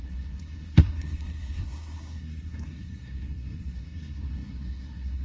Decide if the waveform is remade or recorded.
remade